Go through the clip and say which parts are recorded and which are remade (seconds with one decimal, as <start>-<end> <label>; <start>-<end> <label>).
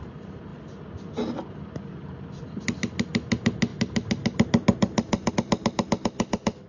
0.0-6.7 recorded